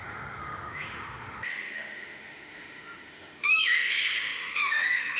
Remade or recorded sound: remade